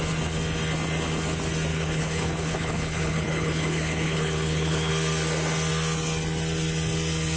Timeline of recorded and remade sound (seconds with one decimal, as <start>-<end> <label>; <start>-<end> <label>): 0.0-1.7 recorded; 1.7-4.9 remade; 4.9-7.4 recorded